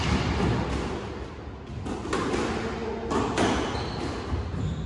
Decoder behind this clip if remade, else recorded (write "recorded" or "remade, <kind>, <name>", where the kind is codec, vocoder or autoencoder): recorded